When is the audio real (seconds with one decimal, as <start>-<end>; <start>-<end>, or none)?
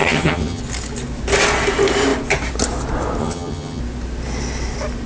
0.6-3.2; 3.8-5.1